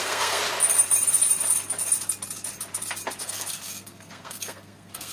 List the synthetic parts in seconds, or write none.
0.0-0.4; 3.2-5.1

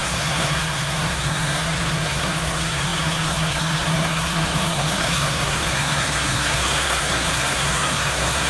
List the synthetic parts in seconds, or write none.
0.0-8.5

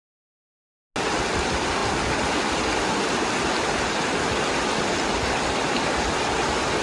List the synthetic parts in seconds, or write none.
none

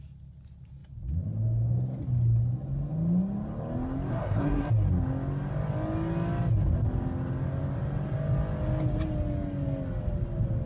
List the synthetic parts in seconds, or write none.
4.1-4.7

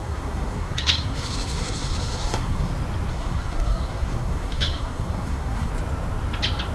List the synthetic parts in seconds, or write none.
0.0-2.7; 3.1-5.7